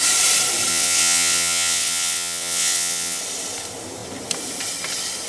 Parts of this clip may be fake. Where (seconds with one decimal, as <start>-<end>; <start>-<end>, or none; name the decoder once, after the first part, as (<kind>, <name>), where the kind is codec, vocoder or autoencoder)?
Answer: 0.7-3.2 (vocoder, WaveNeXt)